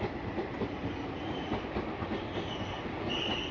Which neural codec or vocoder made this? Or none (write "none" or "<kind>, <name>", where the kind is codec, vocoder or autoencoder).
none